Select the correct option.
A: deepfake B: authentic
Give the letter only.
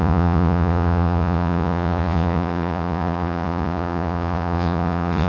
A